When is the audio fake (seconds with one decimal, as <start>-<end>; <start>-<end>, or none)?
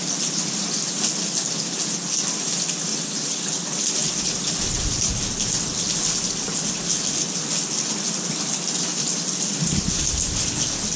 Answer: 2.9-3.4